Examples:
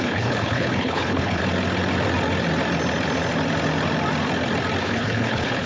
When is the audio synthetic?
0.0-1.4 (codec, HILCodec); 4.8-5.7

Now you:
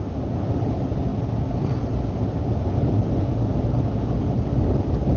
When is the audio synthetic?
none